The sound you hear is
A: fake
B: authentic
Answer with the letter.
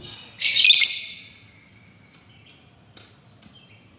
B